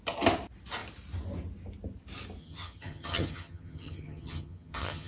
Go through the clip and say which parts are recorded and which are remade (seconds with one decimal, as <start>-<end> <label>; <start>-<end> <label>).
0.0-2.4 recorded; 2.4-5.1 remade